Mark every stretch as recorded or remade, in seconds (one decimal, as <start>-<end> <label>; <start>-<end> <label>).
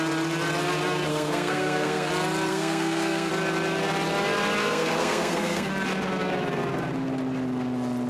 0.0-1.1 recorded; 1.1-2.1 remade; 2.1-2.5 recorded; 2.5-3.3 remade; 3.3-4.6 recorded; 4.6-5.7 remade; 5.7-8.1 recorded